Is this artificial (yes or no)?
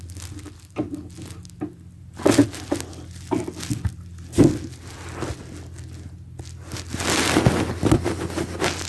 no